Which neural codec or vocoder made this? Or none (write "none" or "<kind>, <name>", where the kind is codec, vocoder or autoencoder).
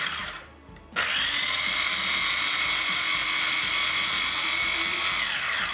none